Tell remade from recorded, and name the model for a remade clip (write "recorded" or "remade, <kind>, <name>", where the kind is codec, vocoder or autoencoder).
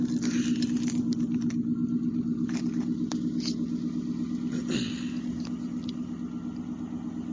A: recorded